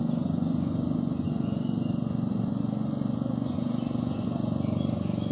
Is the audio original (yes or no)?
no